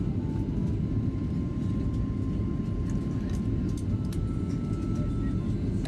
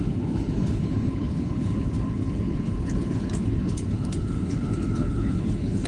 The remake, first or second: second